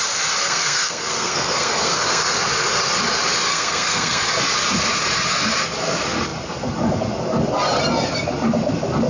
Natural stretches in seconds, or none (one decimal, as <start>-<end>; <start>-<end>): 0.0-0.4; 2.3-3.5; 4.2-9.1